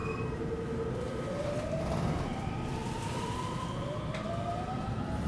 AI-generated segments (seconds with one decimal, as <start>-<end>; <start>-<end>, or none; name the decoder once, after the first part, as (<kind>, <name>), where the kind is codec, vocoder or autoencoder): 0.9-5.3 (vocoder, BigVGAN v2)